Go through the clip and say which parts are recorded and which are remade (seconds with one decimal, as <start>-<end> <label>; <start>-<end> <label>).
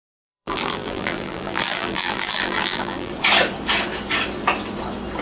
0.0-3.1 remade; 3.1-5.2 recorded